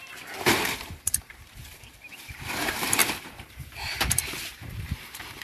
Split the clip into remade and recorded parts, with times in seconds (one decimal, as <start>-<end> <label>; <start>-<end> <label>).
0.0-5.4 remade